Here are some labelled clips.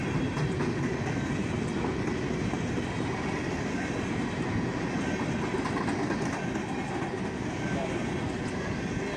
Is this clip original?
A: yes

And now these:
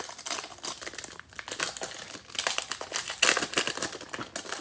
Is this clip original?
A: yes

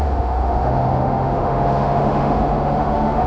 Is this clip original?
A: no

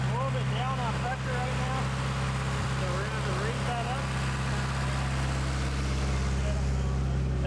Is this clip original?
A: yes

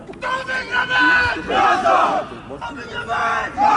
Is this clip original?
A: yes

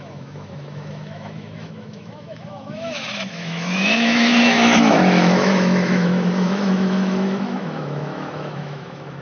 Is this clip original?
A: no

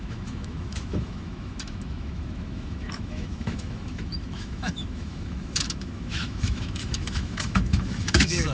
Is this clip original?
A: no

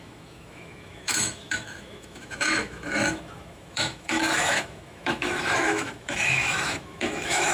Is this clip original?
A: no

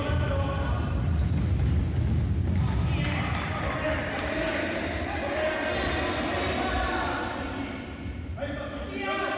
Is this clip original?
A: yes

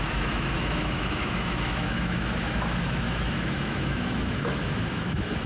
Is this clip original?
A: no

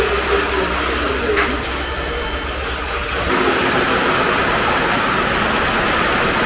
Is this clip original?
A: yes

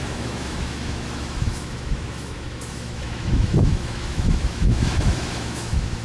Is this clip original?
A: no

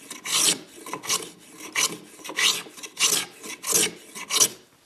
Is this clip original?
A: yes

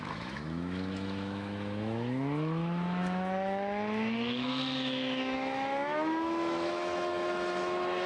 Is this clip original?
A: no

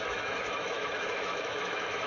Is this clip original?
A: no